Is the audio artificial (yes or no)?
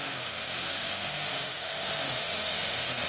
yes